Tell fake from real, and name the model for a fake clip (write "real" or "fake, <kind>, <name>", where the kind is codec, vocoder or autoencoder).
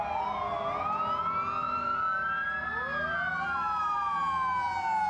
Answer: real